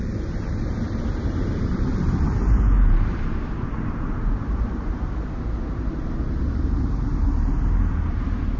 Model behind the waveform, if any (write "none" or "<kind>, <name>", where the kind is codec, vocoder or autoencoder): vocoder, BigVGAN v2